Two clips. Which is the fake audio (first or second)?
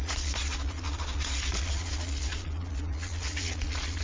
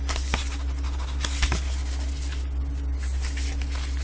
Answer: first